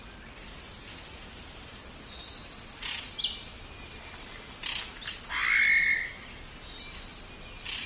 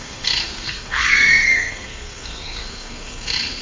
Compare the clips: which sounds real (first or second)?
first